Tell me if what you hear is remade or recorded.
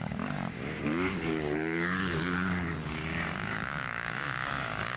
remade